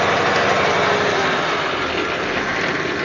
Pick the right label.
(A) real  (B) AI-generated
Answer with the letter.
A